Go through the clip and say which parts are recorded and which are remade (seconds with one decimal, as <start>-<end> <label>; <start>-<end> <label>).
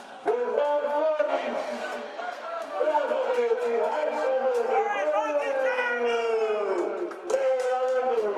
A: 0.0-4.8 remade; 4.8-7.1 recorded; 7.1-8.4 remade